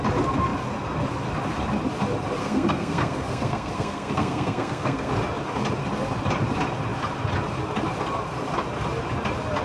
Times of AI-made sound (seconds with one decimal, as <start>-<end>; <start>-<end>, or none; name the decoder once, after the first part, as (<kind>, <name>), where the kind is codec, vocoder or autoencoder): 2.4-5.1 (codec, SNAC)